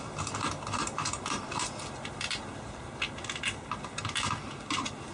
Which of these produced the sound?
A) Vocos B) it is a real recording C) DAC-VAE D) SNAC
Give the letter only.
B